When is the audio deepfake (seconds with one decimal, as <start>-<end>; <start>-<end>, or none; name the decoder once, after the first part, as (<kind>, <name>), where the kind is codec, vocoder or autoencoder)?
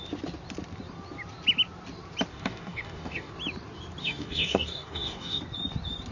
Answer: 2.3-3.3 (codec, DAC); 4.0-5.4